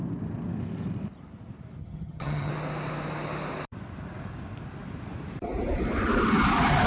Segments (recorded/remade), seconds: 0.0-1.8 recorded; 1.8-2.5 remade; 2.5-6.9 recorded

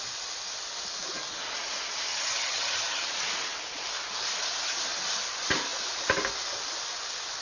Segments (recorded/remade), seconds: 0.0-2.1 recorded; 2.1-3.1 remade; 3.1-7.4 recorded

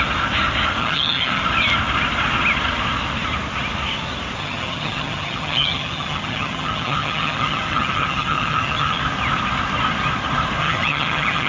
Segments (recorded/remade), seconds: 0.0-0.8 recorded; 0.8-1.4 remade; 1.4-4.4 recorded; 4.4-9.0 remade; 9.0-10.6 recorded; 10.6-11.5 remade

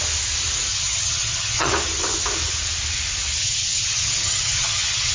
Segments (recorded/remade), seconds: 0.0-0.7 recorded; 0.7-1.7 remade; 1.7-3.4 recorded; 3.4-5.1 remade

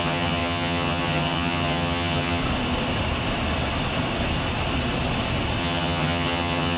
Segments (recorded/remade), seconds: 0.0-2.4 remade; 2.4-5.6 recorded; 5.6-6.8 remade

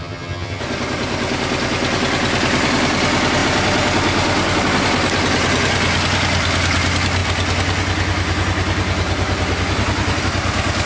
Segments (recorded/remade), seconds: 0.0-0.6 remade; 0.6-10.9 recorded

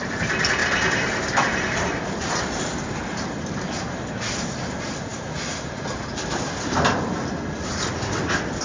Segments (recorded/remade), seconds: 0.0-8.6 recorded

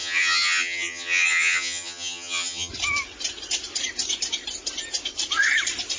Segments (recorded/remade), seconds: 0.0-2.7 remade; 2.7-6.0 recorded